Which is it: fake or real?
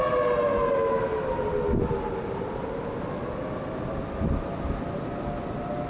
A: real